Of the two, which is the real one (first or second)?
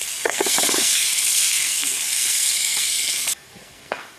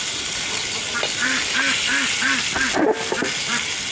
second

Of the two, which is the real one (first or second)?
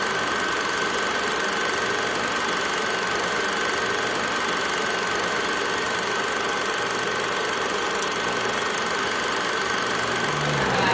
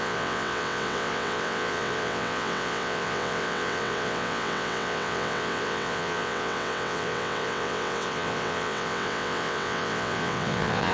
first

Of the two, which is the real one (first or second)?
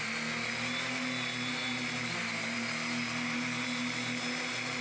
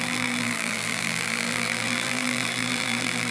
first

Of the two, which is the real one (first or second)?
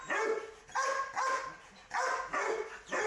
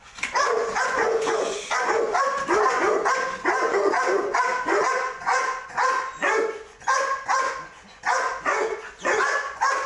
first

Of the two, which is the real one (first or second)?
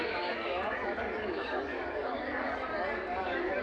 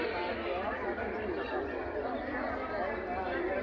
second